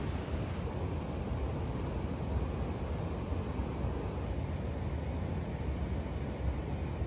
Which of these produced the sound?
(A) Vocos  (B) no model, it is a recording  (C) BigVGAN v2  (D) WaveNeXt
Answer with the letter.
B